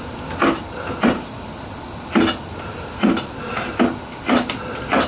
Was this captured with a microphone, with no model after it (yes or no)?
yes